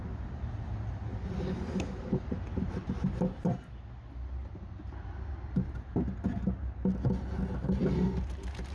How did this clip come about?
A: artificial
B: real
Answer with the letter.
B